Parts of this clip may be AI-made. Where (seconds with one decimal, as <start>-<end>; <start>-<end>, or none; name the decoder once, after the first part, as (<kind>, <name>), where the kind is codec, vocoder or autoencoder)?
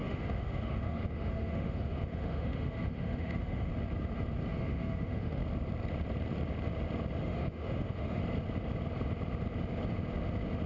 0.0-3.7 (autoencoder, DAC-VAE); 4.5-5.4; 7.2-8.2